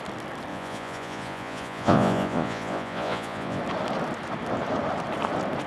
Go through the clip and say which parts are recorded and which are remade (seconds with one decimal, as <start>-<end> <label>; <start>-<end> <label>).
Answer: 0.0-0.5 recorded; 0.5-3.6 remade; 3.6-5.7 recorded